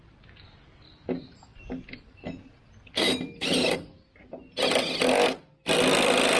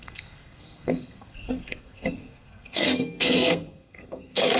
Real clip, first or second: first